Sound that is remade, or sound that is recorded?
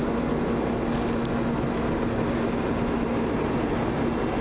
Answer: recorded